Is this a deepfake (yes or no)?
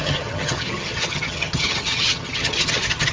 yes